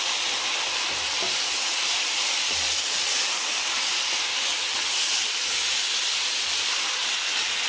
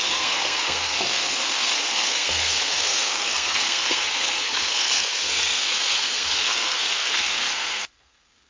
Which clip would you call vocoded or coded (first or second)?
second